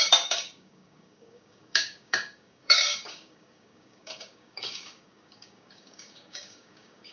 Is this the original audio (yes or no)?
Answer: no